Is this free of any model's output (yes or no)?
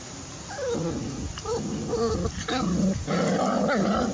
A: yes